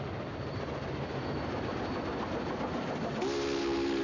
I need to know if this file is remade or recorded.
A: recorded